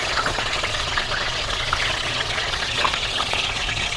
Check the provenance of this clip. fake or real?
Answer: fake